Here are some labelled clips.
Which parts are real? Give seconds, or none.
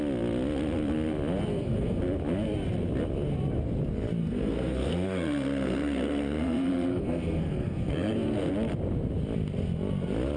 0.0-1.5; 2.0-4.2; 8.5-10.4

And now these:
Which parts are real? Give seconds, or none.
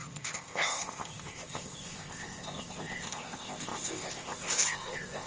none